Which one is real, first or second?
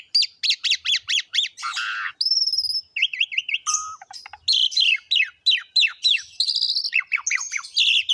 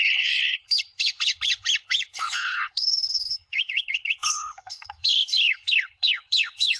first